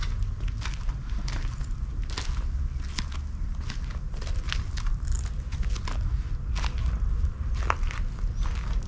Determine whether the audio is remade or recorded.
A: recorded